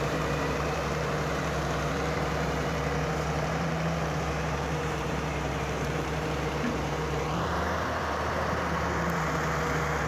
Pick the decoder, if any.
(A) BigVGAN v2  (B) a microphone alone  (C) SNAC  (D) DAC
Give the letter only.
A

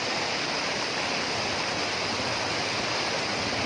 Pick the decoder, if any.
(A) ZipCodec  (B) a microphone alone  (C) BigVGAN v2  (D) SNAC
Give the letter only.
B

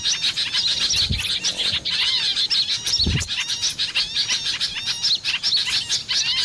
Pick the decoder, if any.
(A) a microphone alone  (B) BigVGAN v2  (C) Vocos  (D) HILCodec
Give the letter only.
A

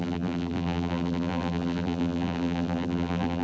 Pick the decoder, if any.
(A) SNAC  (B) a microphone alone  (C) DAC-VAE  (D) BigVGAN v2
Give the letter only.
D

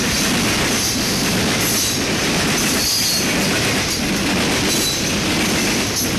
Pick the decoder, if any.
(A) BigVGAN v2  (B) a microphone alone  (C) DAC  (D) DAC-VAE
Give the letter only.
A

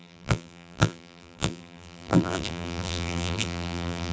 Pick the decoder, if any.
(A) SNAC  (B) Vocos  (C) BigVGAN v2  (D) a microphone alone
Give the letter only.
C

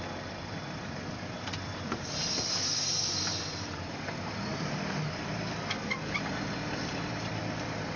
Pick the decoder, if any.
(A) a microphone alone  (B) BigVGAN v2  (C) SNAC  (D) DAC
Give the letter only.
B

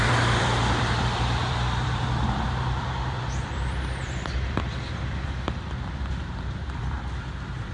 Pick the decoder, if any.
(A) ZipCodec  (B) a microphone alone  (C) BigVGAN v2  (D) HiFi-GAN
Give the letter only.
C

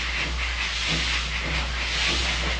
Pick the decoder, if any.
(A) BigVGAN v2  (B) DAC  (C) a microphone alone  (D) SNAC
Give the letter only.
C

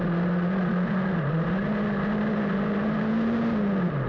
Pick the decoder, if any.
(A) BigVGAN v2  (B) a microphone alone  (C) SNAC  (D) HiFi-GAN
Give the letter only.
B